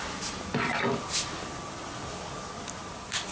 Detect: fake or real real